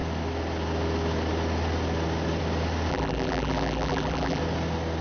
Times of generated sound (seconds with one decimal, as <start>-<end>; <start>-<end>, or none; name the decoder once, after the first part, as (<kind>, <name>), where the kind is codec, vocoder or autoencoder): 2.9-4.4 (vocoder, BigVGAN v2)